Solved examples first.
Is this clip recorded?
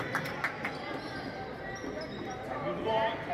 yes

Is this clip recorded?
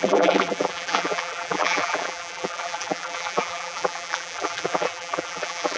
no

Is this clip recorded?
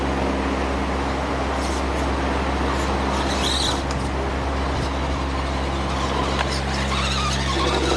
yes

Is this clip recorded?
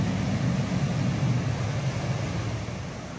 yes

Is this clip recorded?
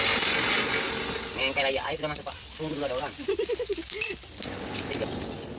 yes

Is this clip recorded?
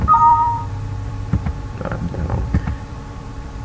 no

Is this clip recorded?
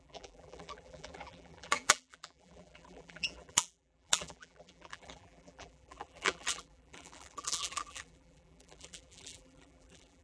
no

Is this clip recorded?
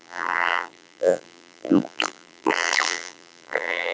no